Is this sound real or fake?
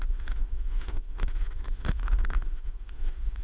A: fake